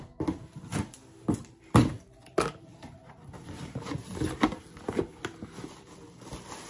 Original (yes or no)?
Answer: yes